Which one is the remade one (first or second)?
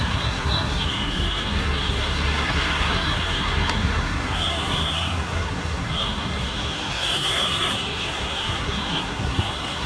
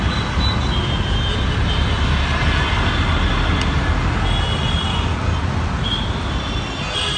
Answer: first